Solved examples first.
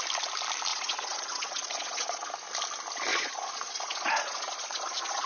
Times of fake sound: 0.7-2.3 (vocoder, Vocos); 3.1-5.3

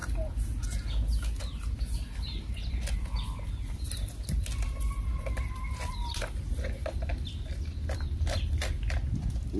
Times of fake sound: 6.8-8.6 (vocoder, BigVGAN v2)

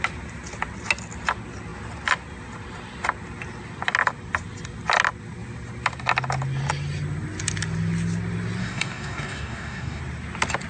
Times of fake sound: 8.6-10.0 (codec, DAC)

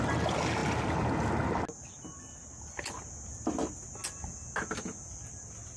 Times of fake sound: none

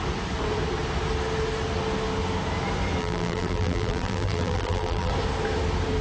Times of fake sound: 3.0-5.1 (vocoder, BigVGAN v2)

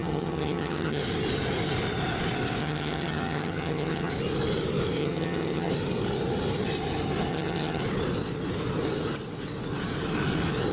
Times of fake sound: 0.0-1.0 (vocoder, HiFi-GAN); 2.6-4.1; 5.0-5.7; 7.3-7.8

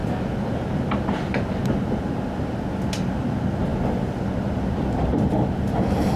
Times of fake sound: none